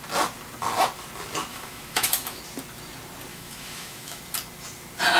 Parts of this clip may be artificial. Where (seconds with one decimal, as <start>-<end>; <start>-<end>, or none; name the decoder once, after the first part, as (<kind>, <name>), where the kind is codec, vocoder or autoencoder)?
1.5-2.4 (autoencoder, DAC-VAE); 3.3-4.2